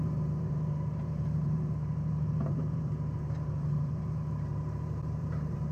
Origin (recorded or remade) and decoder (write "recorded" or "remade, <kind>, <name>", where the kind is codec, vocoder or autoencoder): remade, vocoder, BigVGAN v2